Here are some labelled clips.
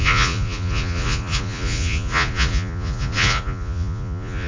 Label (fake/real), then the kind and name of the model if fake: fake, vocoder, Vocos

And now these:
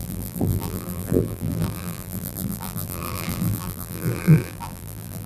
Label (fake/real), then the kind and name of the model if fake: fake, vocoder, BigVGAN v2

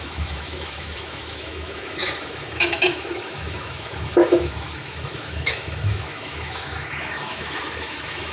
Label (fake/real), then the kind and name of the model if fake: fake, autoencoder, DAC-VAE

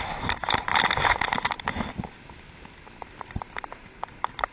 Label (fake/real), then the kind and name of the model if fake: real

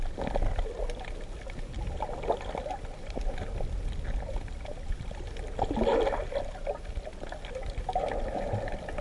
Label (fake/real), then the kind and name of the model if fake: real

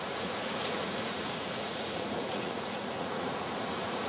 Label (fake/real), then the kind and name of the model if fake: fake, vocoder, Vocos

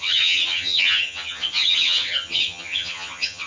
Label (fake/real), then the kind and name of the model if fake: fake, vocoder, HiFi-GAN